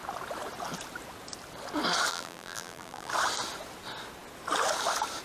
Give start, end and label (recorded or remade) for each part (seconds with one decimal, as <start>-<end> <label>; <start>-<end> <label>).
0.0-2.1 recorded; 2.1-3.1 remade; 3.1-5.2 recorded